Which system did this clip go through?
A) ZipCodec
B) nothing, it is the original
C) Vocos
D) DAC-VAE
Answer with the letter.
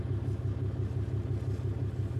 B